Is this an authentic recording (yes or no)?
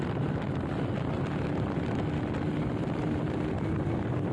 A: no